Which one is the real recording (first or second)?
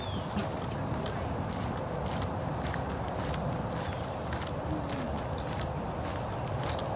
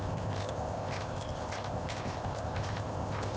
first